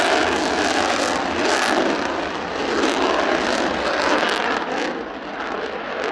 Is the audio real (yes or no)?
yes